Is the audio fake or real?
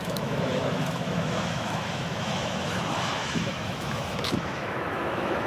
fake